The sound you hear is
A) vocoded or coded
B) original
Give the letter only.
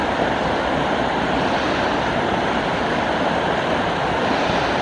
B